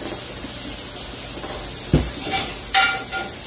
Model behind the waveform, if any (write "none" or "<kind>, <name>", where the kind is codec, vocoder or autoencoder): none